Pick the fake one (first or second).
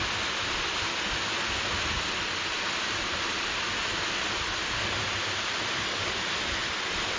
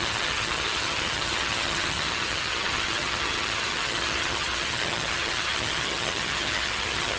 second